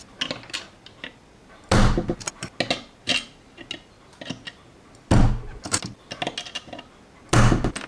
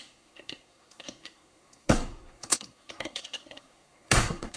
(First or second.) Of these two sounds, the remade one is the second